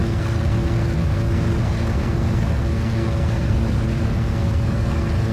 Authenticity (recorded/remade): remade